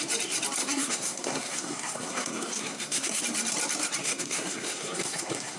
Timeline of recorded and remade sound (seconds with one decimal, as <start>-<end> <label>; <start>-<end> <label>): 0.0-0.6 recorded; 0.6-3.2 remade; 3.2-4.0 recorded; 4.0-5.6 remade